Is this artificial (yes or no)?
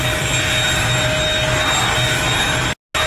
no